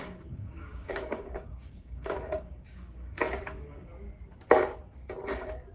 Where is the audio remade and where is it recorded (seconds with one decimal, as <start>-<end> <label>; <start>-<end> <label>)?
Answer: 0.0-3.9 remade; 3.9-5.7 recorded